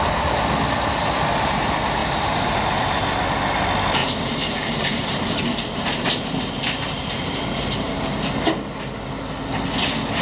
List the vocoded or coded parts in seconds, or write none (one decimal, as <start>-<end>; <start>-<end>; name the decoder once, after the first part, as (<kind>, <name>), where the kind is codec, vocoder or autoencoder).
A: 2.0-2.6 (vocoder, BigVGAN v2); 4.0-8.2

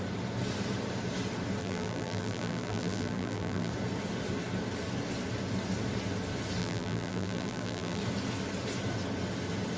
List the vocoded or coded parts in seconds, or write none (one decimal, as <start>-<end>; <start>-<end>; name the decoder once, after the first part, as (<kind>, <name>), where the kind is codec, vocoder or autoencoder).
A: 1.6-3.7 (vocoder, BigVGAN v2); 6.6-8.0

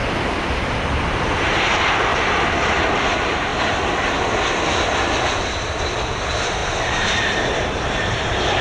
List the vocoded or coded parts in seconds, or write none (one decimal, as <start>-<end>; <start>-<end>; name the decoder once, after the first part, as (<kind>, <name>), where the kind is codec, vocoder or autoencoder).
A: 1.1-2.1 (vocoder, BigVGAN v2); 2.9-3.5; 6.0-8.6

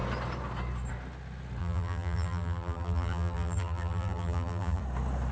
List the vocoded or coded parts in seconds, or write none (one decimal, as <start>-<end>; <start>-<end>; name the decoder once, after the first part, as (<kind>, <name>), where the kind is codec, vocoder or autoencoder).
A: 1.6-4.8 (vocoder, BigVGAN v2)

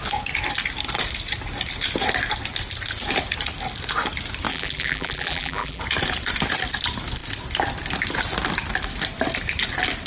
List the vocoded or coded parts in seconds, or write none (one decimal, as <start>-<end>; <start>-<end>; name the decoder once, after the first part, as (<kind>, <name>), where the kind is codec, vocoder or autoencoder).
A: 4.5-5.8 (vocoder, BigVGAN v2)